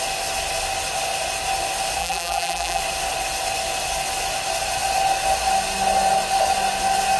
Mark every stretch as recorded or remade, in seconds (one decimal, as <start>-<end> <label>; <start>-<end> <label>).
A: 0.0-2.0 recorded; 2.0-2.8 remade; 2.8-7.2 recorded